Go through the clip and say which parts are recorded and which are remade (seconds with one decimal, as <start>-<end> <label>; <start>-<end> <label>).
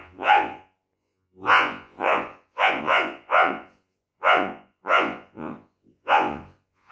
0.0-6.9 remade